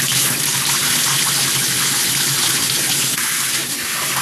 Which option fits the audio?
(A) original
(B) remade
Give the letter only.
A